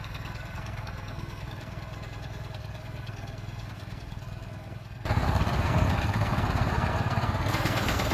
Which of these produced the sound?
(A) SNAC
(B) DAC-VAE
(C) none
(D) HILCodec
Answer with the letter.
A